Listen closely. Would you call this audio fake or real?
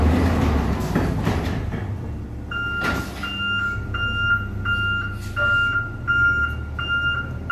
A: real